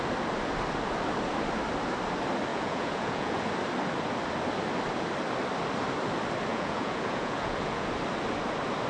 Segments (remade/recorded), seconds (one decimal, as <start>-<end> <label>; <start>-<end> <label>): 0.0-2.5 recorded; 2.5-3.4 remade; 3.4-6.5 recorded; 6.5-7.9 remade; 7.9-8.9 recorded